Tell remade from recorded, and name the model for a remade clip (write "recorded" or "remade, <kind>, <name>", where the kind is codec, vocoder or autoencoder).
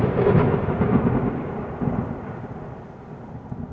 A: recorded